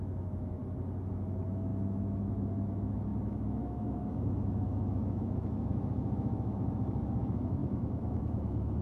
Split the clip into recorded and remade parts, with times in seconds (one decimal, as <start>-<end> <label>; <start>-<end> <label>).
0.0-0.6 remade; 0.6-1.1 recorded; 1.1-8.8 remade